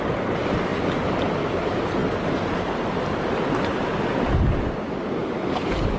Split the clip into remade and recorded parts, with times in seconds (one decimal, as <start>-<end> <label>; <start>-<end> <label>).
0.0-0.7 remade; 0.7-1.3 recorded; 1.3-2.0 remade; 2.0-4.9 recorded; 4.9-6.0 remade